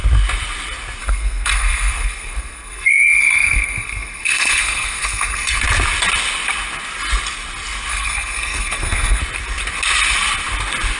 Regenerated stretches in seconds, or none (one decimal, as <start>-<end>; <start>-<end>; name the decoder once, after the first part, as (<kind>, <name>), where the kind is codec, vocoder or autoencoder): 1.0-5.6 (codec, SNAC); 7.9-9.2

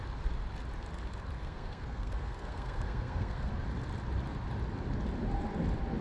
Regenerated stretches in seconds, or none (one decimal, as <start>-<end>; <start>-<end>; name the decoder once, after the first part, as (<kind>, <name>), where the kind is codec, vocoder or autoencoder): 1.4-3.5 (codec, SNAC)

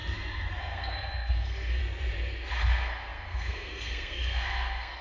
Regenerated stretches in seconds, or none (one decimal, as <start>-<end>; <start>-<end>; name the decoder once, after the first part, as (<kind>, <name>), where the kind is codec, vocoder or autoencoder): 0.6-1.8 (codec, SNAC); 2.5-5.0

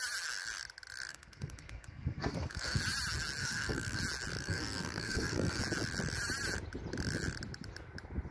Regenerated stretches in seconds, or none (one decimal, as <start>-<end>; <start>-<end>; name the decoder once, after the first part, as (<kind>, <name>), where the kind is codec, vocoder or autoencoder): 1.1-2.8 (codec, SNAC); 3.4-4.0; 4.4-5.6

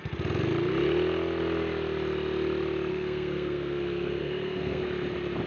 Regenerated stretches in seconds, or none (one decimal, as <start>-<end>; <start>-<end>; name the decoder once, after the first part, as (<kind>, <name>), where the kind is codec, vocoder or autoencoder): 2.9-4.8 (codec, SNAC)

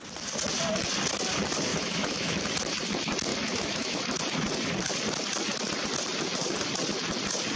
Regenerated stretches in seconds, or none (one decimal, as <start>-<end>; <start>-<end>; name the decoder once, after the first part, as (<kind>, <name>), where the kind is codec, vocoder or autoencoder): 1.7-2.4 (autoencoder, DAC-VAE); 3.3-4.2